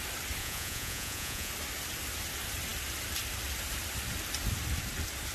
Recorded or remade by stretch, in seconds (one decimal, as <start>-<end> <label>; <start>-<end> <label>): 0.0-0.4 recorded; 0.4-1.5 remade; 1.5-5.3 recorded